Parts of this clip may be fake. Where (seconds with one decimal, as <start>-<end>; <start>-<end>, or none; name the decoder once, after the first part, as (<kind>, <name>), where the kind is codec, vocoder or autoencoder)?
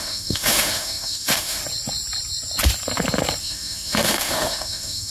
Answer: 0.0-1.6 (autoencoder, DAC-VAE); 3.4-5.1